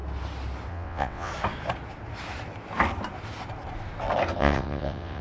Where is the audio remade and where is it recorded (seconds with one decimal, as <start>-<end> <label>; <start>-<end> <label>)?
0.0-0.7 recorded; 0.7-1.3 remade; 1.3-4.4 recorded; 4.4-5.2 remade